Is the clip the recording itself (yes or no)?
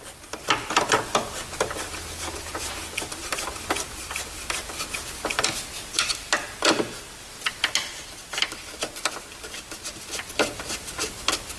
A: yes